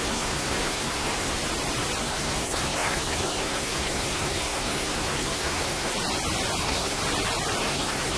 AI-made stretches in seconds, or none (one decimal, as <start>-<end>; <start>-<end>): 0.0-1.4; 2.0-5.9; 6.6-7.0; 7.6-8.2